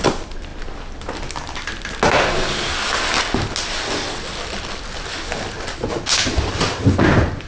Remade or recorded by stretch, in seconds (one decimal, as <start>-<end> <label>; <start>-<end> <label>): 0.0-7.5 recorded